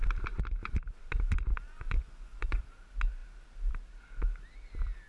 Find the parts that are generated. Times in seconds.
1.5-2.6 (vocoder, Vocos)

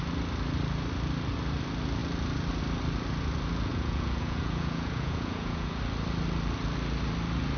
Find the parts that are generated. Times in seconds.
3.7-5.8 (vocoder, Vocos)